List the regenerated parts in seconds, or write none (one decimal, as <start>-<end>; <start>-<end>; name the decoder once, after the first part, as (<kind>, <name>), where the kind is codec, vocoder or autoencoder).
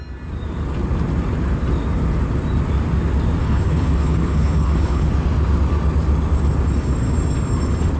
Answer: 3.4-5.1 (codec, HILCodec)